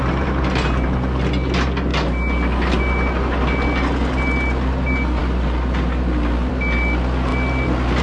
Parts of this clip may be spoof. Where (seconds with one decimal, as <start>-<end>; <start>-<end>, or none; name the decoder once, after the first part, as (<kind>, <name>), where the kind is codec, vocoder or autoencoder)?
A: none